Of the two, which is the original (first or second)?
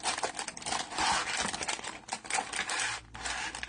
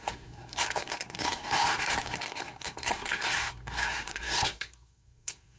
first